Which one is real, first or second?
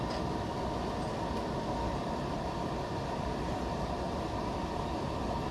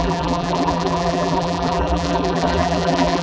first